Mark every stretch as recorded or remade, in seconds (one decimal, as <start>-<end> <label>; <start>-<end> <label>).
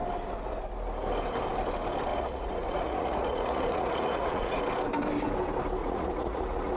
0.0-2.1 recorded; 2.1-4.6 remade; 4.6-5.8 recorded; 5.8-6.8 remade